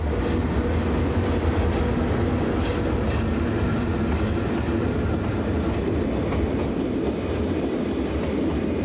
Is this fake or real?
real